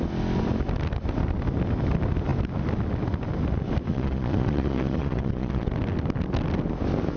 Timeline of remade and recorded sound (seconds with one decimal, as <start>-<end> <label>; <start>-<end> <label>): 0.0-3.9 recorded; 3.9-5.7 remade; 5.7-7.2 recorded